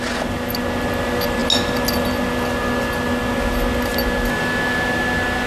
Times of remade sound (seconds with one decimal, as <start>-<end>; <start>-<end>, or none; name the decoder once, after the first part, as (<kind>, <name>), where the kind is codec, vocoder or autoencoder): none